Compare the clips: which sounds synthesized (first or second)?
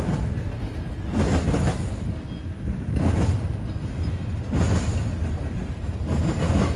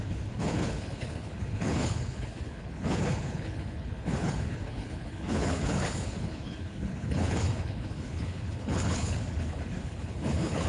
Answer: second